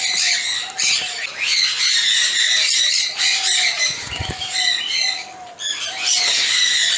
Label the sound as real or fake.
real